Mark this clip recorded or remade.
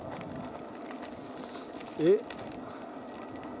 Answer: recorded